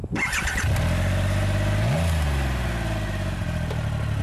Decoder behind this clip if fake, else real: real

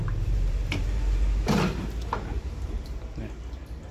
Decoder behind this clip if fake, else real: fake, vocoder, BigVGAN v2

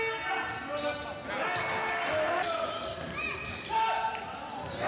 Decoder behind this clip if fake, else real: real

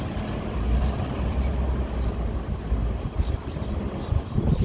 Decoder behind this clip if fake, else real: real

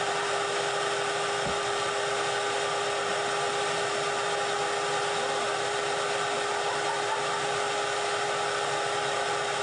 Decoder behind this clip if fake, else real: real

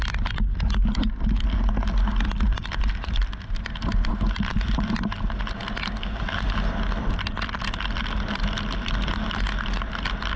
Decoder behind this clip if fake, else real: real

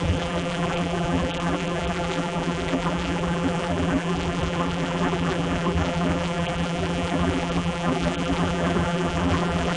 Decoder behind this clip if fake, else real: fake, vocoder, BigVGAN v2